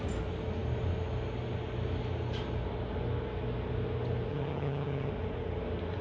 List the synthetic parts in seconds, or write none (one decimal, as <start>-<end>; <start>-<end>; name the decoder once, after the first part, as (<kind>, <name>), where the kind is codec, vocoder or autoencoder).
4.3-5.1 (vocoder, HiFi-GAN)